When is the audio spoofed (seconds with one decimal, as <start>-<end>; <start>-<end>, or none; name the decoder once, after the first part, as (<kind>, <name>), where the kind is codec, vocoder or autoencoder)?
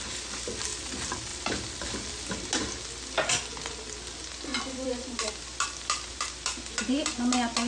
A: 4.5-5.3 (vocoder, BigVGAN v2)